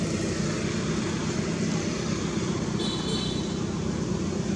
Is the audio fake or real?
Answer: real